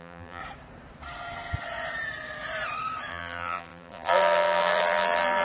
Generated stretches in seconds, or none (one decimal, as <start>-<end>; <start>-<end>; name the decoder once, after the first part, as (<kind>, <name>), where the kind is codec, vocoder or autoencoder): 0.0-0.4 (vocoder, BigVGAN v2); 3.1-5.4